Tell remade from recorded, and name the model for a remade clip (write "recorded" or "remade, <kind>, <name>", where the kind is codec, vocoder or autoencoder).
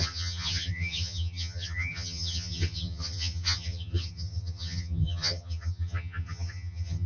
remade, vocoder, HiFi-GAN